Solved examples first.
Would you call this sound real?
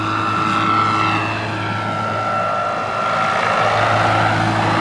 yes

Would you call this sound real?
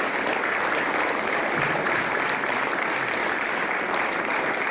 yes